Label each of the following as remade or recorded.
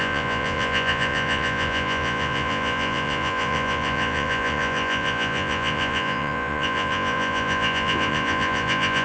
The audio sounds remade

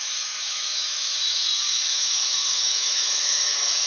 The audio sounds remade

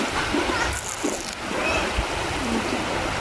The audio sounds recorded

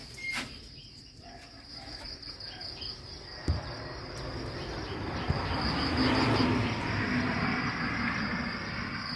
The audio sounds recorded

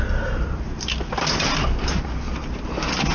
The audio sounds recorded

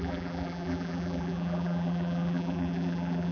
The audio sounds remade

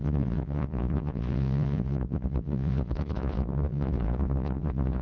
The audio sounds remade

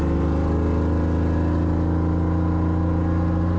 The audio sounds recorded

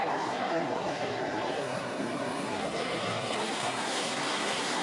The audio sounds remade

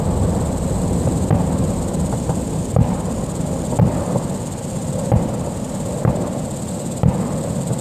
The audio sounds recorded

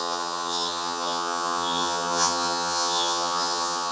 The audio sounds remade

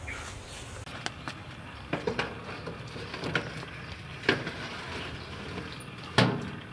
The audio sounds recorded